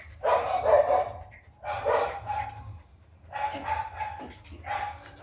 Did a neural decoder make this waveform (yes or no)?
no